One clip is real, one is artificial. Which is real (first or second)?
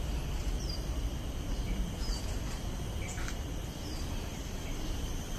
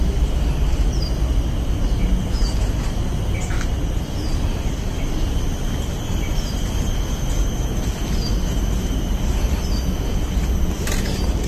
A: second